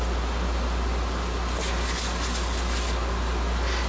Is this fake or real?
real